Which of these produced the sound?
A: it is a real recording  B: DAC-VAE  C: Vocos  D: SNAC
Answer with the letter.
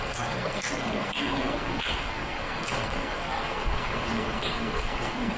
D